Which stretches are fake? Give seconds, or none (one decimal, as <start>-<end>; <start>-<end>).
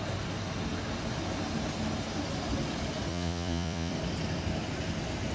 3.1-3.9